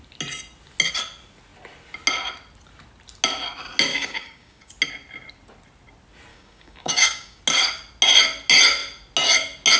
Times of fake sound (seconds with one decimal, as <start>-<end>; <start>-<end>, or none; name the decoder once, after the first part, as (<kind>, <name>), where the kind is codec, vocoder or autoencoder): 3.9-4.7 (codec, DAC); 6.3-7.4